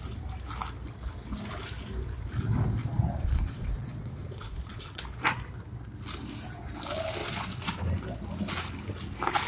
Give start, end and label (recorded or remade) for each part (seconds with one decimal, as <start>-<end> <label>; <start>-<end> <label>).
0.0-2.8 recorded; 2.8-5.0 remade; 5.0-7.2 recorded; 7.2-7.7 remade; 7.7-9.5 recorded